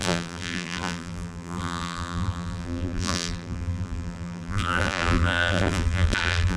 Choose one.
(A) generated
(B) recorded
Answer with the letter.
A